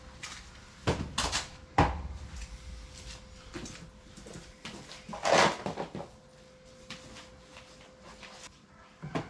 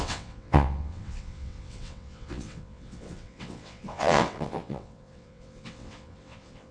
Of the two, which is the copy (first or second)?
second